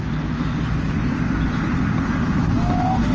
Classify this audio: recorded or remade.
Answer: recorded